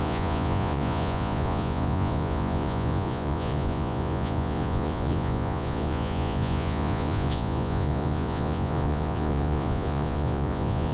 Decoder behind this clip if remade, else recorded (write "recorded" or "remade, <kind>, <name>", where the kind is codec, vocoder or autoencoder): remade, vocoder, Vocos